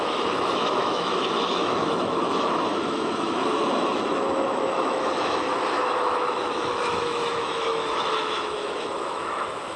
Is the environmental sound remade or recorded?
remade